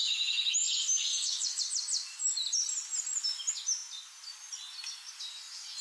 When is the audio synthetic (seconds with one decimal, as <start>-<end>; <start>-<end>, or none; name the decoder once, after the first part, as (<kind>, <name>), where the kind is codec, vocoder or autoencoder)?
1.1-1.6 (autoencoder, DAC-VAE)